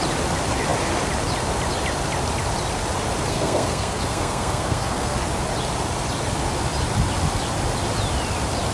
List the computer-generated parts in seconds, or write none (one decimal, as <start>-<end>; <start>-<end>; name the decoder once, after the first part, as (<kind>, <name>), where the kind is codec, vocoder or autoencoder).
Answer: 3.3-5.2 (codec, SNAC)